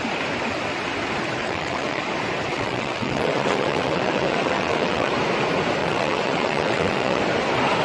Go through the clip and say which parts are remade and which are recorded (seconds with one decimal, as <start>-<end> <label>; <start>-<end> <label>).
0.0-1.4 recorded; 1.4-2.0 remade; 2.0-2.5 recorded; 2.5-5.1 remade; 5.1-5.8 recorded; 5.8-7.2 remade; 7.2-7.8 recorded